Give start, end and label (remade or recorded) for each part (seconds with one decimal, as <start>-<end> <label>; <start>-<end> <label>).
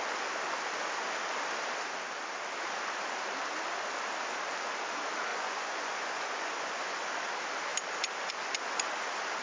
0.0-5.3 recorded; 5.3-7.0 remade; 7.0-9.4 recorded